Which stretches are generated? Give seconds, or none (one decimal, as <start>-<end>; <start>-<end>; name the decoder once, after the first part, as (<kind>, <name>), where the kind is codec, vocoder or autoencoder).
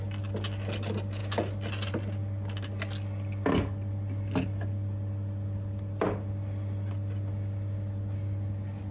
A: none